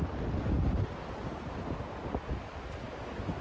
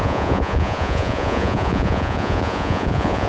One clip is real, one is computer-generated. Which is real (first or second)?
first